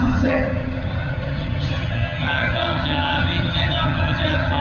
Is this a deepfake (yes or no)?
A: yes